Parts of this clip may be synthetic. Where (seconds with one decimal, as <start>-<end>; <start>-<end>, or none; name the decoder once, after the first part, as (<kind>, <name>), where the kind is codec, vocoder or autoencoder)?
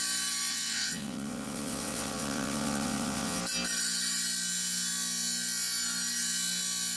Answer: 0.5-3.4 (vocoder, WaveNeXt)